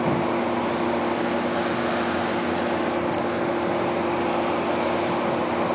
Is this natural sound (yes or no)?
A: yes